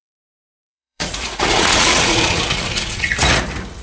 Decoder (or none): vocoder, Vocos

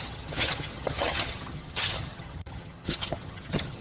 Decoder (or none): vocoder, HiFi-GAN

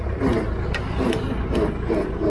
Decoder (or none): none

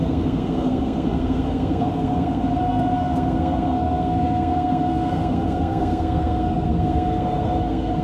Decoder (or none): codec, SNAC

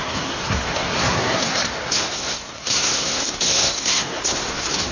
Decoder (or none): codec, SNAC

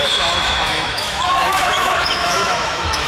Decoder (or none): autoencoder, DAC-VAE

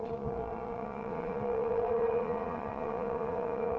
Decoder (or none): vocoder, Vocos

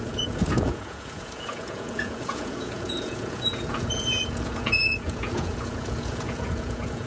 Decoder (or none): vocoder, Vocos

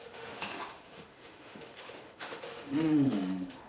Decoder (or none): autoencoder, DAC-VAE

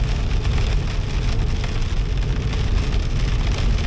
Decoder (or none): none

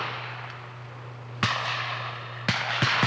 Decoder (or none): none